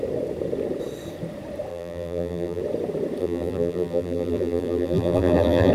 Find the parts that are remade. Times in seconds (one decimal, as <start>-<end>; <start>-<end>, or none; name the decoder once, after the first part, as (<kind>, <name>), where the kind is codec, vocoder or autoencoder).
1.7-2.6 (vocoder, BigVGAN v2); 3.2-5.7

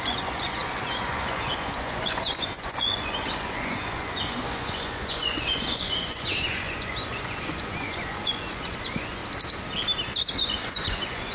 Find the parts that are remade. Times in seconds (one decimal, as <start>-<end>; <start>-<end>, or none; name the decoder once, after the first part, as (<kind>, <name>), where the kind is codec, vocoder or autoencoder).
0.0-9.2 (vocoder, Vocos); 10.4-11.3